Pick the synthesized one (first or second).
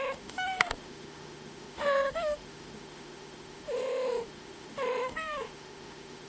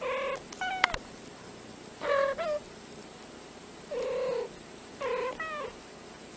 first